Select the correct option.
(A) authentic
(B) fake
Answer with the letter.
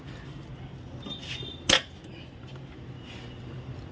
A